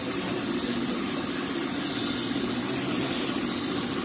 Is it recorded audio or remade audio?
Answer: recorded